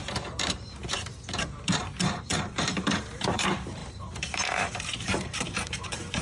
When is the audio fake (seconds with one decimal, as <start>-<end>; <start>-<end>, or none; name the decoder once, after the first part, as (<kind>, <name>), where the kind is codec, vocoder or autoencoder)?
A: 0.0-0.8 (vocoder, BigVGAN v2); 1.4-6.2